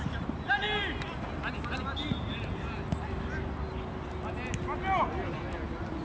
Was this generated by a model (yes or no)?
no